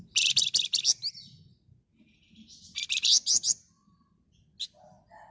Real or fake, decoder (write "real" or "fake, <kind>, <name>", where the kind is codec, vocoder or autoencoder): real